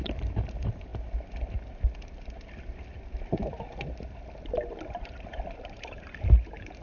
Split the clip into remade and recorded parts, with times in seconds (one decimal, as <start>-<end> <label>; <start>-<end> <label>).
0.0-0.9 remade; 0.9-4.9 recorded; 4.9-6.8 remade